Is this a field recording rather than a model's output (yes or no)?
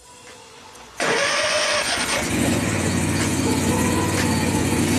no